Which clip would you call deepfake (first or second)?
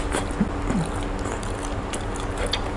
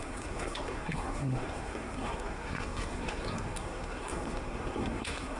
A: second